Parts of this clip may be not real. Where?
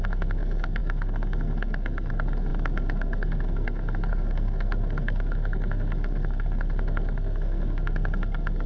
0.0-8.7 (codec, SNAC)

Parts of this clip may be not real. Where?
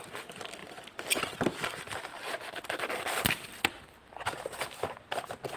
0.6-1.3 (vocoder, BigVGAN v2); 2.1-5.6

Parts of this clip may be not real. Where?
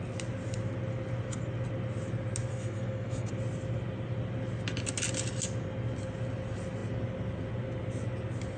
2.5-3.3 (codec, SNAC)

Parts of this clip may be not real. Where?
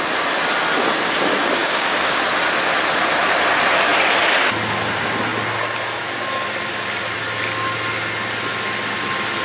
1.6-2.2 (codec, DAC)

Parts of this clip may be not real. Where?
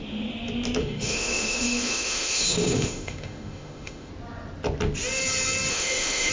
0.8-4.1 (autoencoder, DAC-VAE); 5.7-6.3